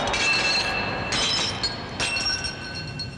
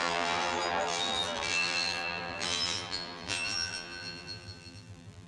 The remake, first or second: second